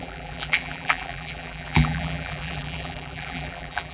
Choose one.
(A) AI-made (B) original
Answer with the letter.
A